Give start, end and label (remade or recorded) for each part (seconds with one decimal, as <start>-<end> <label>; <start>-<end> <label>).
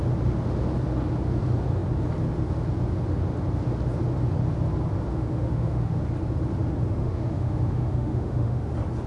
0.0-5.1 recorded; 5.1-6.0 remade; 6.0-7.0 recorded; 7.0-8.7 remade; 8.7-9.1 recorded